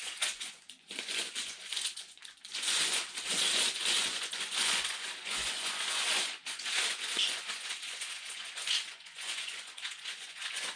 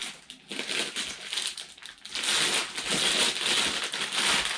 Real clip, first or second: second